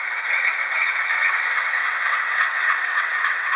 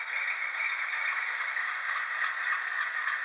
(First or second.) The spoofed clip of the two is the first